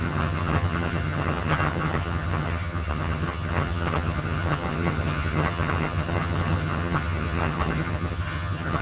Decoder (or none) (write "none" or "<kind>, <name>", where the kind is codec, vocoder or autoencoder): vocoder, HiFi-GAN